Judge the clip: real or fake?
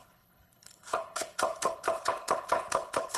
fake